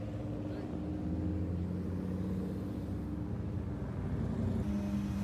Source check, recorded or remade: recorded